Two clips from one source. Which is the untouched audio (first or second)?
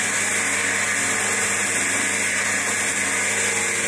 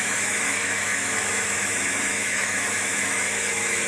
first